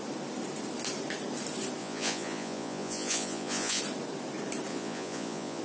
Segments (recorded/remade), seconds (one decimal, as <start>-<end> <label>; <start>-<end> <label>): 0.0-1.8 recorded; 1.8-3.8 remade; 3.8-4.7 recorded; 4.7-5.6 remade